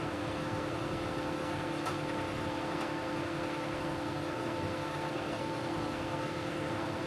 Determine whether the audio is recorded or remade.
remade